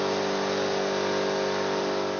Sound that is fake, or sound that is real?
real